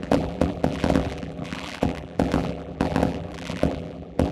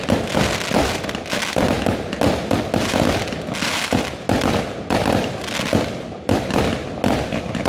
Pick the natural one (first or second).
second